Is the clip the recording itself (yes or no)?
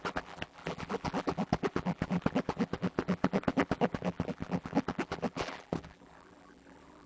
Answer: no